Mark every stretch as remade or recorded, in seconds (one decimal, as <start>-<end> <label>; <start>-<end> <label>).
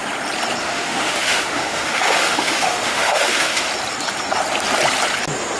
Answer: 0.0-0.6 recorded; 0.6-3.7 remade; 3.7-5.6 recorded